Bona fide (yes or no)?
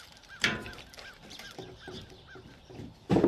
no